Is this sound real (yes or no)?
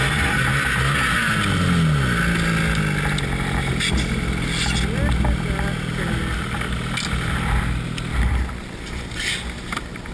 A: yes